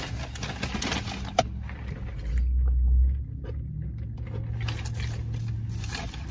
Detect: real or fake real